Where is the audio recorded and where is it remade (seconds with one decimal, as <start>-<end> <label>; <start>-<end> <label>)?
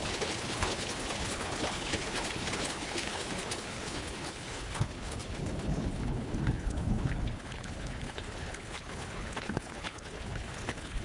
0.0-11.0 remade